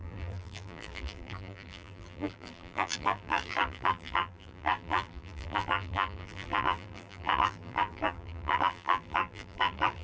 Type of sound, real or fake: fake